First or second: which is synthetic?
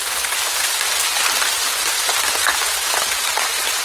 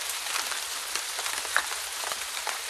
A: first